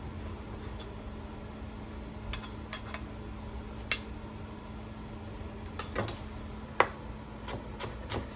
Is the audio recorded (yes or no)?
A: yes